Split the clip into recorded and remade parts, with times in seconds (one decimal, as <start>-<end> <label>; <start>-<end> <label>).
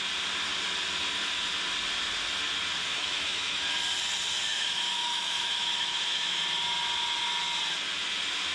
0.0-2.8 recorded; 2.8-3.6 remade; 3.6-4.5 recorded; 4.5-6.4 remade; 6.4-8.5 recorded